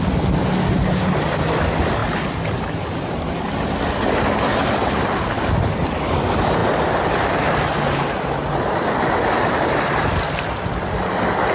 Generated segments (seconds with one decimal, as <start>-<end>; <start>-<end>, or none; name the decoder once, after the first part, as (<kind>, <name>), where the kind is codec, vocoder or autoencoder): none